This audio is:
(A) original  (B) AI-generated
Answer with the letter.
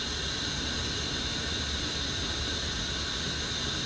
A